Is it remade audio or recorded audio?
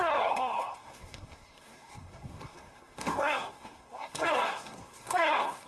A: remade